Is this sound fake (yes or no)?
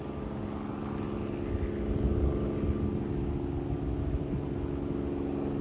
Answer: no